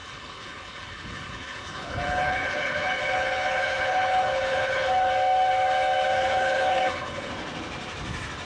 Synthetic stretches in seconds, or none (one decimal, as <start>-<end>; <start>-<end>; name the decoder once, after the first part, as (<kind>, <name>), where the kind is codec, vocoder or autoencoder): 0.0-5.1 (codec, HILCodec); 6.1-7.3